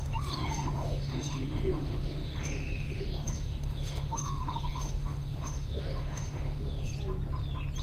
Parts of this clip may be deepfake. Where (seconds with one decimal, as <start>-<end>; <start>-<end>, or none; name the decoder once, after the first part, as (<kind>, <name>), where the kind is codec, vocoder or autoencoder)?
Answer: 0.0-6.9 (autoencoder, DAC-VAE)